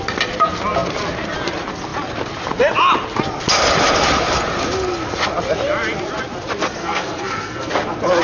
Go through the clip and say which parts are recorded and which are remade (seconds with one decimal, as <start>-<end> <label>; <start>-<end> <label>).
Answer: 0.0-6.8 recorded; 6.8-7.7 remade; 7.7-8.2 recorded